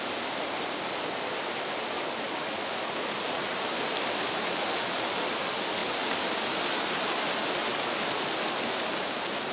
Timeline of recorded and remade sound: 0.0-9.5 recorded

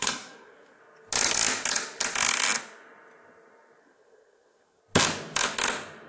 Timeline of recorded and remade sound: 0.0-0.8 remade; 0.8-3.8 recorded; 3.8-4.8 remade; 4.8-6.1 recorded